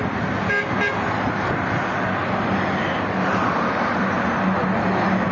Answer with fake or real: real